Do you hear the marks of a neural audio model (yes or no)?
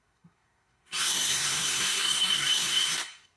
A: yes